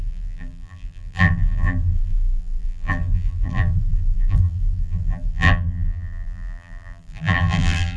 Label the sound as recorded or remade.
remade